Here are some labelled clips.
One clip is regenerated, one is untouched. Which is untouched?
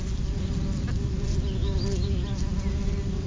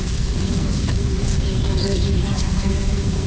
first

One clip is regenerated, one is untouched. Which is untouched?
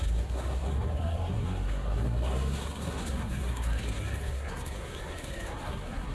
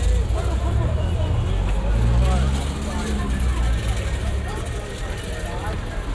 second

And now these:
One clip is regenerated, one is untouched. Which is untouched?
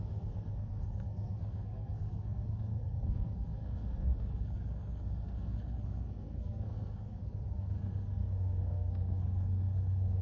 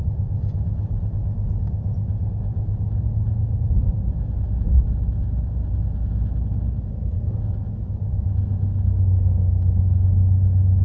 second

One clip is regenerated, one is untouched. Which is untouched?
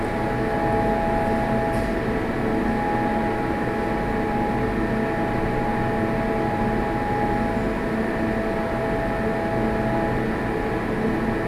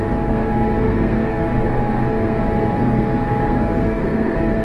first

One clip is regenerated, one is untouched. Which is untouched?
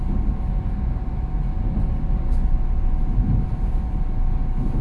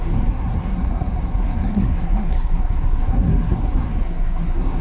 first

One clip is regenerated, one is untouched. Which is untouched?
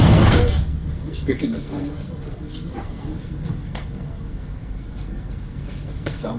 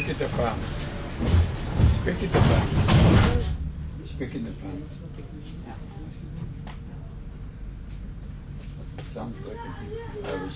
second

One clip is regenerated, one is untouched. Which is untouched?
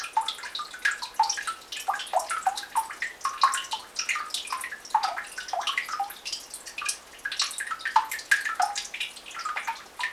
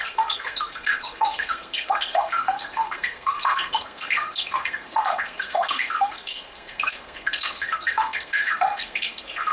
first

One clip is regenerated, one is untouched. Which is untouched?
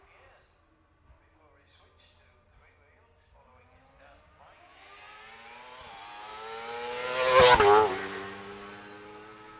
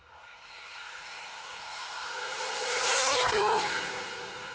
first